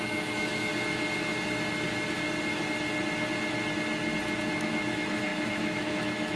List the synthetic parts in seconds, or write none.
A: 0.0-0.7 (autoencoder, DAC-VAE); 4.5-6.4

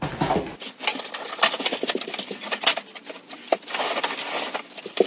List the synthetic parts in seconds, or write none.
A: none